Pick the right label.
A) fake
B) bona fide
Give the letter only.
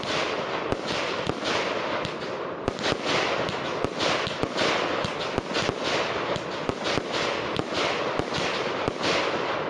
B